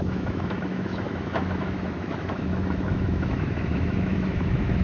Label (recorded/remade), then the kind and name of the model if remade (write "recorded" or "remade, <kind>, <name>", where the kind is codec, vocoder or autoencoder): remade, autoencoder, DAC-VAE